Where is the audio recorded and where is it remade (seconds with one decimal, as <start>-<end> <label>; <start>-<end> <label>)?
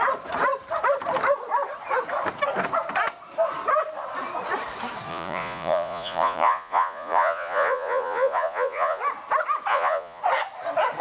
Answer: 0.0-5.1 recorded; 5.1-9.0 remade; 9.0-9.7 recorded; 9.7-10.2 remade; 10.2-11.0 recorded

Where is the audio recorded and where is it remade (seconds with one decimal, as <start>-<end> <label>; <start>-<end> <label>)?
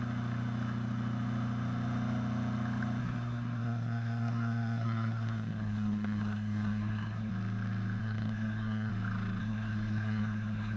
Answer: 0.0-3.0 recorded; 3.0-7.3 remade; 7.3-8.0 recorded; 8.0-8.9 remade; 8.9-9.4 recorded; 9.4-10.8 remade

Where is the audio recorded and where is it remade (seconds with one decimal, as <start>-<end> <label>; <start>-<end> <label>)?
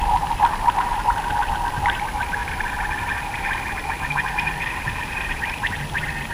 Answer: 0.0-6.3 recorded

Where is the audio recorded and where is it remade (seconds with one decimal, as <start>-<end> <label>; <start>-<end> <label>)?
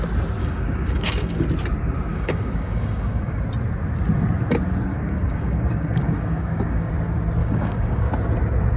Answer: 0.0-0.4 recorded; 0.4-1.4 remade; 1.4-2.1 recorded; 2.1-3.4 remade; 3.4-4.9 recorded; 4.9-6.9 remade; 6.9-7.4 recorded; 7.4-8.1 remade; 8.1-8.8 recorded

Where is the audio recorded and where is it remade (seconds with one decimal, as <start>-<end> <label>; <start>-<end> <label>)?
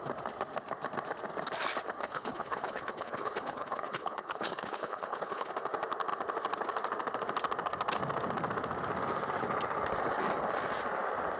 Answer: 0.0-2.0 recorded; 2.0-5.5 remade; 5.5-11.4 recorded